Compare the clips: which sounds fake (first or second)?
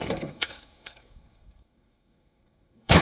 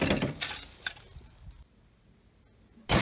first